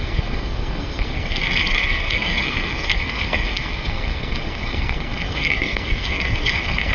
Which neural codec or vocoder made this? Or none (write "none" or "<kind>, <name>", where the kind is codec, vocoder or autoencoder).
codec, SNAC